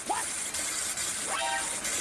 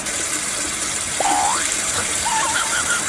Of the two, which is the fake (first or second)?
second